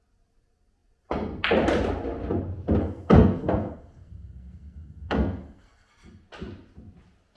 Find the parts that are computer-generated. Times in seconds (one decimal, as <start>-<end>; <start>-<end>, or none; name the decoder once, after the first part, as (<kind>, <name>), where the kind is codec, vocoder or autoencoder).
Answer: 2.8-5.9 (codec, SNAC)